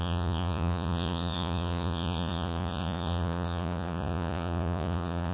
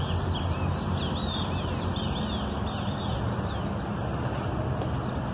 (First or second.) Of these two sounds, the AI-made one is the first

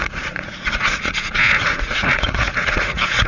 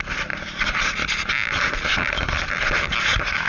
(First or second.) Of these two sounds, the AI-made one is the first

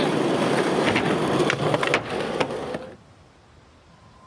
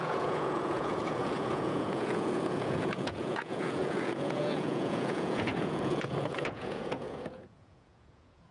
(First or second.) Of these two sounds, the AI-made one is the second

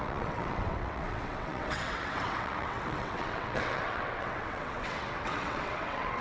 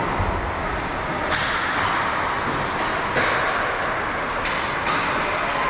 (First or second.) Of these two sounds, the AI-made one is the first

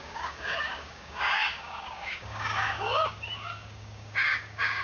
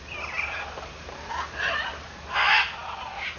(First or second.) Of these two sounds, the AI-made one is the first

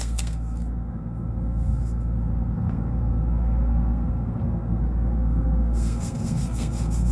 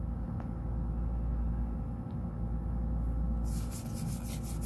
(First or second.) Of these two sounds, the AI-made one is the first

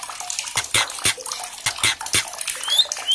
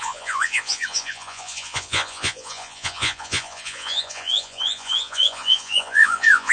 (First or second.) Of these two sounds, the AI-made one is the second